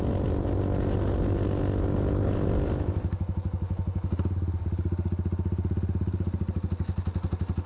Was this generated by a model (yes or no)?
no